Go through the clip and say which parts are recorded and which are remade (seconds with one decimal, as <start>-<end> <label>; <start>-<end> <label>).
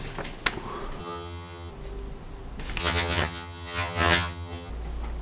0.0-1.0 recorded; 1.0-1.7 remade; 1.7-2.8 recorded; 2.8-4.7 remade; 4.7-5.2 recorded